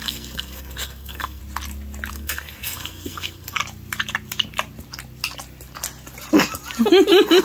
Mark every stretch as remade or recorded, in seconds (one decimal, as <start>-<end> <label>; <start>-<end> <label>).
0.0-1.4 remade; 1.4-2.1 recorded; 2.1-3.6 remade; 3.6-7.4 recorded